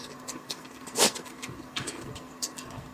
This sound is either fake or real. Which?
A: fake